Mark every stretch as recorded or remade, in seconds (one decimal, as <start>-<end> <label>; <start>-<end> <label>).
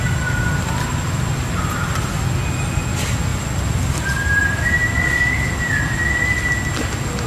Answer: 0.0-7.3 recorded